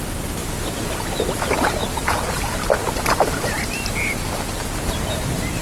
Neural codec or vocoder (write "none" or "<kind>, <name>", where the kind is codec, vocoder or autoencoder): vocoder, BigVGAN v2